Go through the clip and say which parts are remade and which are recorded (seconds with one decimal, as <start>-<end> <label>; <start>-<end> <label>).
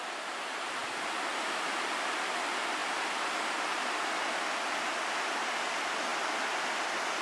0.0-7.2 recorded